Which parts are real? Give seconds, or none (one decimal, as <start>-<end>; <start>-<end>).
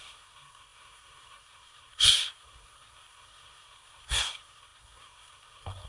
none